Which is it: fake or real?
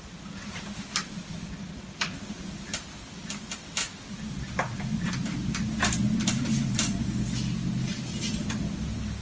real